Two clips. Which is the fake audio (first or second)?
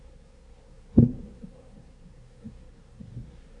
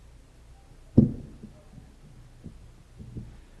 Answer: first